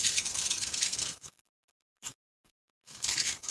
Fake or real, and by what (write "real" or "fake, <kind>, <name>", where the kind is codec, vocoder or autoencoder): fake, codec, SNAC